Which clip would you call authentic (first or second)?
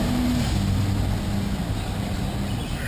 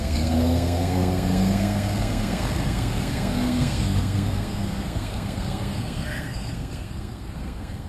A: first